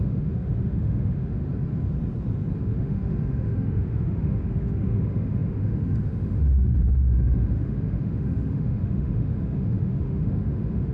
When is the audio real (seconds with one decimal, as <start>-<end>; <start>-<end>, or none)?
1.4-2.6